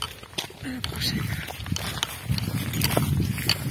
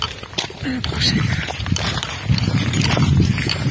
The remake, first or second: second